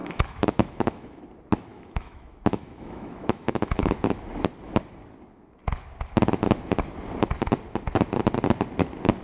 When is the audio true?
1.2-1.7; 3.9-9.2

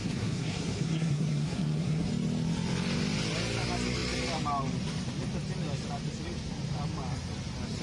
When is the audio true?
2.1-7.8

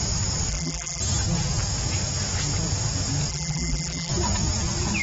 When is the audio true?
0.0-0.5; 1.0-3.3; 4.1-5.0

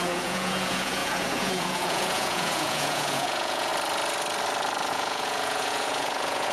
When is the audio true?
3.7-4.9

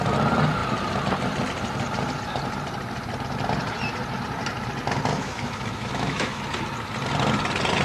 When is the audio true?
0.0-5.1; 6.4-7.8